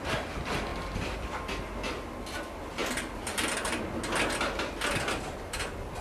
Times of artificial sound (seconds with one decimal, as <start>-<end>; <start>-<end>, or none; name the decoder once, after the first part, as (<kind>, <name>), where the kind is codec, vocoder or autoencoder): 0.7-1.7 (vocoder, BigVGAN v2); 2.8-3.8